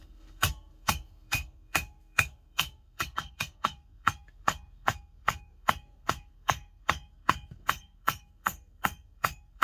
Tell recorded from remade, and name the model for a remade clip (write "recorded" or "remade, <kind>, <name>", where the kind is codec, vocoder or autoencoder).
remade, codec, SNAC